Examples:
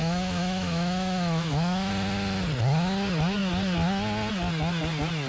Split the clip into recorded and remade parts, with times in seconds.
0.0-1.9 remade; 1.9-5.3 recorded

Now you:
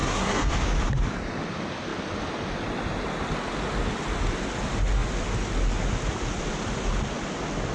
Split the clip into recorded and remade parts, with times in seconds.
0.0-0.5 remade; 0.5-7.7 recorded

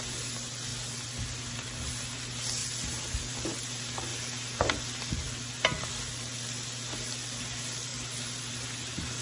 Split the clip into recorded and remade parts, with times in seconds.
0.0-4.1 recorded; 4.1-4.8 remade; 4.8-9.2 recorded

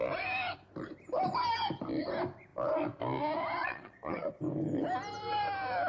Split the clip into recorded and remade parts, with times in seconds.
0.0-3.6 recorded; 3.6-4.3 remade; 4.3-5.9 recorded

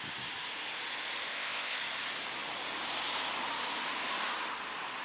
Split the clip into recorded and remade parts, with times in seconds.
0.0-1.3 recorded; 1.3-1.8 remade; 1.8-5.0 recorded

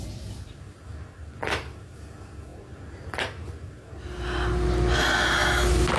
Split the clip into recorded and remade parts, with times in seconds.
0.0-6.0 recorded

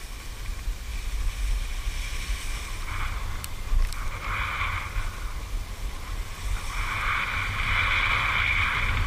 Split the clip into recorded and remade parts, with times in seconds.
0.0-9.1 recorded